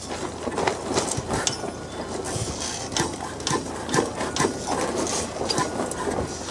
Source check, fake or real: real